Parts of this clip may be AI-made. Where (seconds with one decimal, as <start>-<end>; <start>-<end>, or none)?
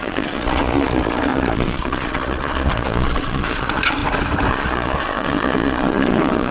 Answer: 0.0-4.0; 4.5-6.5